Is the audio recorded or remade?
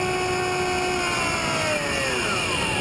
recorded